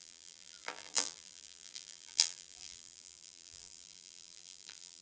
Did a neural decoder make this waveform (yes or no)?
yes